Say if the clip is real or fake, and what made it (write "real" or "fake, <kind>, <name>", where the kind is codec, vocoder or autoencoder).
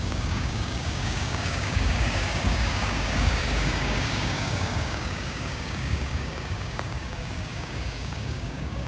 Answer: fake, codec, DAC